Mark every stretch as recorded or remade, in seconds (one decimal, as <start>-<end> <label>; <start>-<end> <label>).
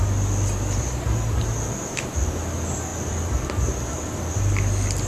0.0-2.9 recorded; 2.9-4.2 remade; 4.2-5.1 recorded